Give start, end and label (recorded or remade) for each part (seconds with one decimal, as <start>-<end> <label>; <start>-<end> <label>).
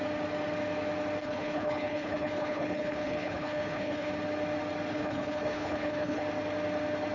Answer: 0.0-1.2 recorded; 1.2-4.1 remade; 4.1-4.9 recorded; 4.9-6.2 remade; 6.2-7.1 recorded